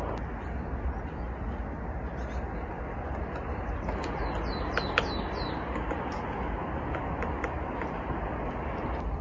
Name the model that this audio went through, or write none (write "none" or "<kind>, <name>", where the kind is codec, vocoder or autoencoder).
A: none